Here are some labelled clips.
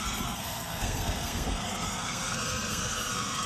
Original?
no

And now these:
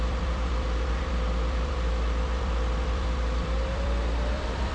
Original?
no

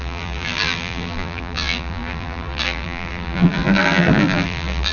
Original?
no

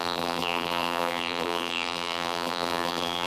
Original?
no